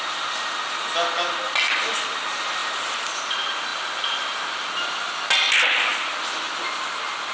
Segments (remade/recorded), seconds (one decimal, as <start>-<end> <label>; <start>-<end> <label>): 0.0-2.6 recorded; 2.6-3.2 remade; 3.2-7.3 recorded